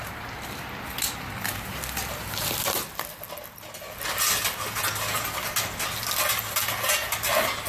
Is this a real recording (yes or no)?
yes